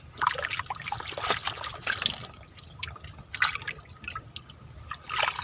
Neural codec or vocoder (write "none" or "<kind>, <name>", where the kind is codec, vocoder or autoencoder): none